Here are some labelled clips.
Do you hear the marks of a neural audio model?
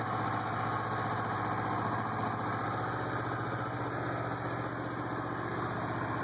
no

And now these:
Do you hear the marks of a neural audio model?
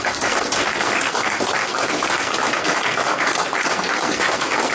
yes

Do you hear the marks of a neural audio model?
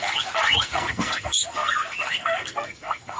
yes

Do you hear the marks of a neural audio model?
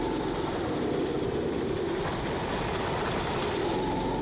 no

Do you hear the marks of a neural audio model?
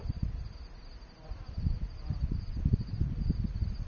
no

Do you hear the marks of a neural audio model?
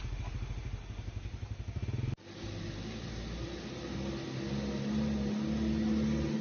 no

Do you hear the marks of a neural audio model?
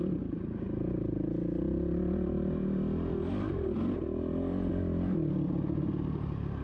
no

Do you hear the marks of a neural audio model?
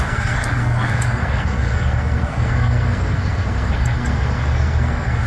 yes